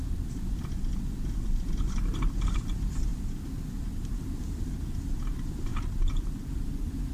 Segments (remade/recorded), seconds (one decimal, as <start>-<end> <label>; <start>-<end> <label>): 0.0-3.1 recorded; 3.1-4.1 remade; 4.1-5.7 recorded; 5.7-6.5 remade; 6.5-7.1 recorded